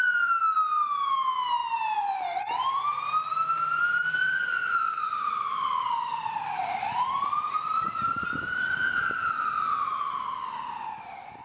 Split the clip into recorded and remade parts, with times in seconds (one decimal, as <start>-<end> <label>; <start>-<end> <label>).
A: 0.0-1.6 recorded; 1.6-3.3 remade; 3.3-6.1 recorded; 6.1-8.2 remade; 8.2-11.4 recorded